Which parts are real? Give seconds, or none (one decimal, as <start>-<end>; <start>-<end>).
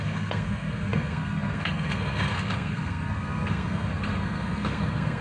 none